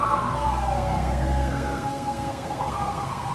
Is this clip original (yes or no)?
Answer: no